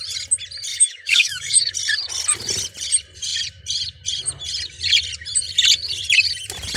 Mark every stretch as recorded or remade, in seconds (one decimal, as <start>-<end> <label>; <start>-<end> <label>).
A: 0.0-0.7 recorded; 0.7-1.7 remade; 1.7-6.8 recorded